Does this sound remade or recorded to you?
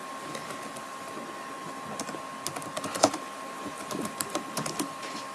recorded